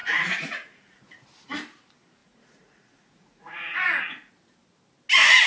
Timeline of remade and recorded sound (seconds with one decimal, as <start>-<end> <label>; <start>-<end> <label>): 0.0-1.1 remade; 1.1-2.2 recorded; 2.2-4.3 remade; 4.3-5.5 recorded

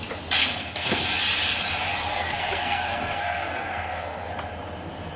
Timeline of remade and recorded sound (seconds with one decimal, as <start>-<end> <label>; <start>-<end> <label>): 0.0-0.4 recorded; 0.4-1.0 remade; 1.0-2.1 recorded; 2.1-4.3 remade; 4.3-5.2 recorded

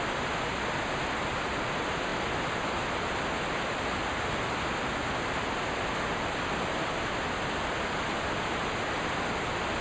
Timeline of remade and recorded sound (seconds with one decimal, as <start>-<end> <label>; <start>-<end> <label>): 0.0-9.8 recorded

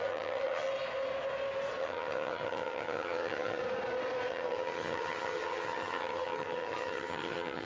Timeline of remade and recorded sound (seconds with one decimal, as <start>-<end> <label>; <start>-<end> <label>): 0.0-0.7 remade; 0.7-1.8 recorded; 1.8-3.6 remade; 3.6-4.3 recorded; 4.3-7.6 remade